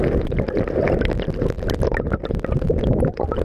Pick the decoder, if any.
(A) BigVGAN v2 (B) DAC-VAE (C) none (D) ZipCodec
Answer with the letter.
C